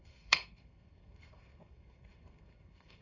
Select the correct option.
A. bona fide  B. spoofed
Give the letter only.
B